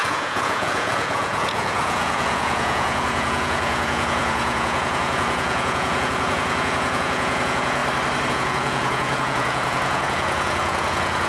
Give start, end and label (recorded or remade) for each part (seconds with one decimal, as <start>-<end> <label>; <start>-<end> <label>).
0.0-7.8 remade; 7.8-8.3 recorded; 8.3-11.3 remade